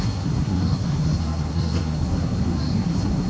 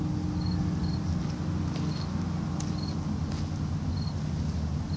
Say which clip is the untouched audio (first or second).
second